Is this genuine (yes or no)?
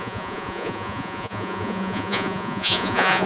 no